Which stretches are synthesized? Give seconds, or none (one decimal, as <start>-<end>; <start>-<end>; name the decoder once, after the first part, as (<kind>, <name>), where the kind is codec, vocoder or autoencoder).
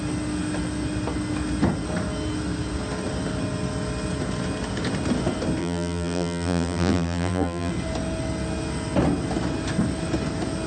5.6-7.7 (vocoder, BigVGAN v2)